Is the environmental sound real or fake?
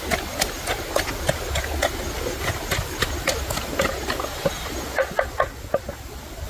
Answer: real